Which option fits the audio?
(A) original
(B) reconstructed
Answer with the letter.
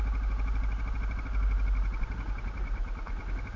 A